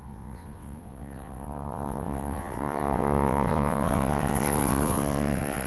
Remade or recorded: remade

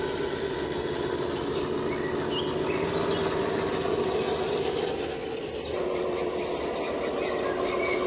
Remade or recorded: recorded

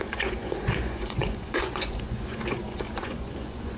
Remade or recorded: remade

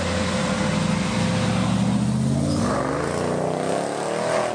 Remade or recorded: recorded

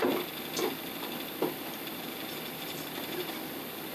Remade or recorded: remade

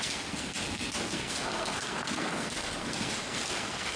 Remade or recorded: remade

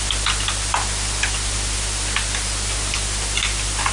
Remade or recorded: recorded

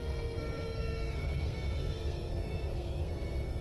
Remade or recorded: remade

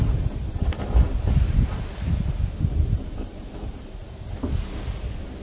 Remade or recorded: recorded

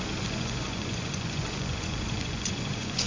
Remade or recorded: remade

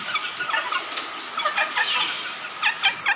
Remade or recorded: recorded